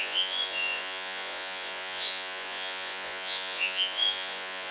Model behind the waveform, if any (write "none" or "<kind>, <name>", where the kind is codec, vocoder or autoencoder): vocoder, Vocos